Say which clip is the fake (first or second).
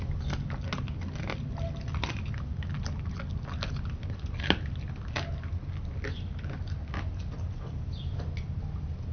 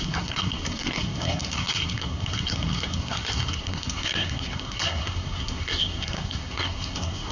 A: second